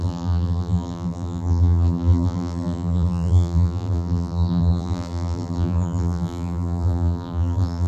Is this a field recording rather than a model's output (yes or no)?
no